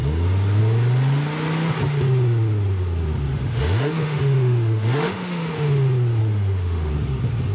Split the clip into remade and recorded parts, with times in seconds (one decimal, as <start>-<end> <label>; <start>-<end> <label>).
0.0-3.3 recorded; 3.3-5.5 remade; 5.5-6.2 recorded; 6.2-6.9 remade; 6.9-7.5 recorded